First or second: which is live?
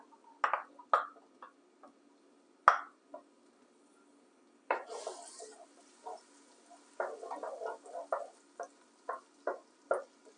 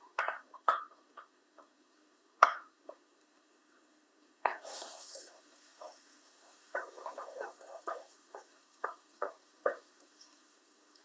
first